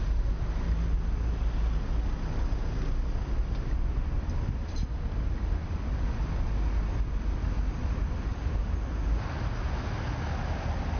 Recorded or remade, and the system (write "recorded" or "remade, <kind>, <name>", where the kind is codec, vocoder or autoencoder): recorded